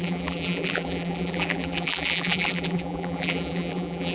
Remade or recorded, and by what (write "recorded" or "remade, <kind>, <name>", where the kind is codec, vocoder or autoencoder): remade, vocoder, BigVGAN v2